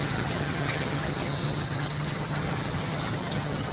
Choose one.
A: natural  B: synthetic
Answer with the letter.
B